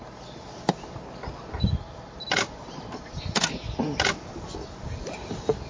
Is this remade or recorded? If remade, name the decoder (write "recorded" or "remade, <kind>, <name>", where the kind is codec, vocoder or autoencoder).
recorded